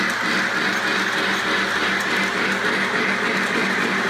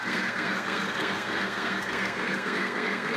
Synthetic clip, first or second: second